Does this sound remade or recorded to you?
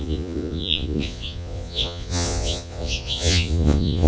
remade